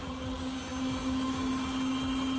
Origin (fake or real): real